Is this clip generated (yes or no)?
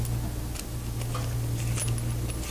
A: no